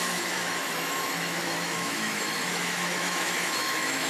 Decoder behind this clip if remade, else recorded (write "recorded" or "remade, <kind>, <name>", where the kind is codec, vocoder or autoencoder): remade, autoencoder, DAC-VAE